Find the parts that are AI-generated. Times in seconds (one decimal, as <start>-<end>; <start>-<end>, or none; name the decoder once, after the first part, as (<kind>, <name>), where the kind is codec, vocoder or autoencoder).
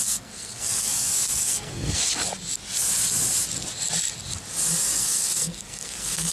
0.0-2.1 (codec, SNAC); 4.9-6.3